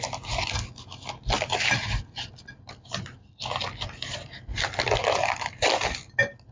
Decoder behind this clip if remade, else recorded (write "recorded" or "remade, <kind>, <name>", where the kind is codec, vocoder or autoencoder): recorded